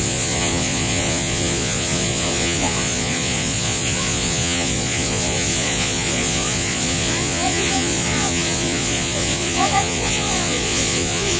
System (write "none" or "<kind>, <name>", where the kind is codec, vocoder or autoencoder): vocoder, Vocos